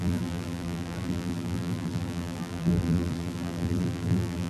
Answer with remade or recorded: remade